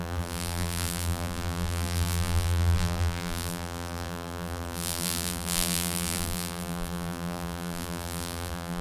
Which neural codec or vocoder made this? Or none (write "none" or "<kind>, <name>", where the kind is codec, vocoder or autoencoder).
vocoder, BigVGAN v2